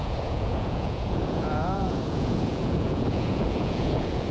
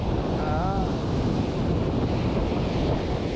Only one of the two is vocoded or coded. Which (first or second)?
first